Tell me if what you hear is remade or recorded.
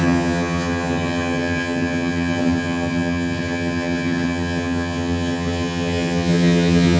remade